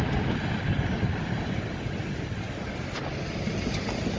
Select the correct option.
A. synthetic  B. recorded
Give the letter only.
B